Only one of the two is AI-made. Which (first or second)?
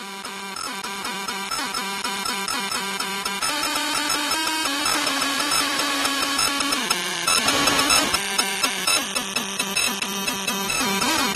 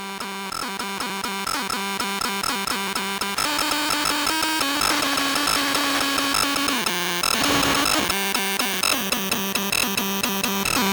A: first